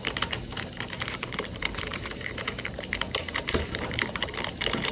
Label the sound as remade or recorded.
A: remade